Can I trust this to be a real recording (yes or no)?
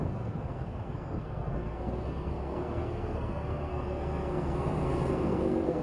no